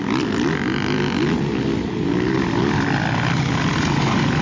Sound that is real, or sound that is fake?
real